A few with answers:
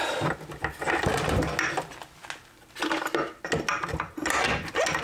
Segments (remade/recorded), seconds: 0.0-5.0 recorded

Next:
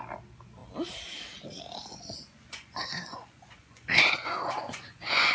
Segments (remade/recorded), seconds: 0.0-1.8 recorded; 1.8-5.3 remade